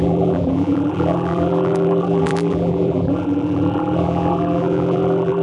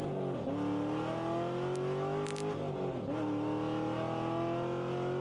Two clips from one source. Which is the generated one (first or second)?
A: first